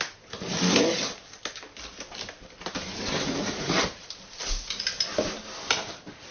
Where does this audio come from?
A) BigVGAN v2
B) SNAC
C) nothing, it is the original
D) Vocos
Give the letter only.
C